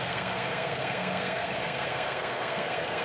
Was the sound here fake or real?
fake